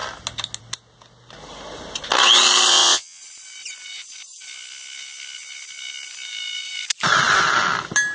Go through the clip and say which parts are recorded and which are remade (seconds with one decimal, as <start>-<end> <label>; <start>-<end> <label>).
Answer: 0.0-2.7 recorded; 2.7-3.2 remade; 3.2-8.1 recorded